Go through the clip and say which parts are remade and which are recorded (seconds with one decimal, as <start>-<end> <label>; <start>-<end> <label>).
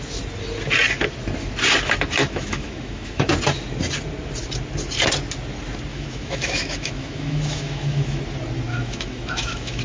0.0-2.2 recorded; 2.2-3.3 remade; 3.3-5.9 recorded; 5.9-8.2 remade; 8.2-8.7 recorded; 8.7-9.8 remade